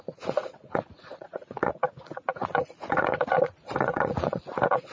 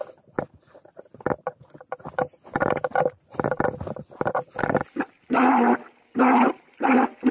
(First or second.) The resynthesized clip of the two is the first